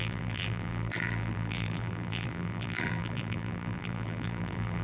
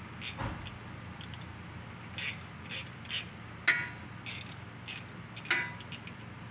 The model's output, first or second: first